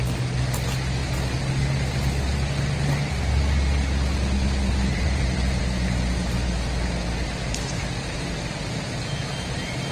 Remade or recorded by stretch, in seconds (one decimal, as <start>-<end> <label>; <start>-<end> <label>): 0.0-4.4 recorded; 4.4-5.6 remade; 5.6-9.9 recorded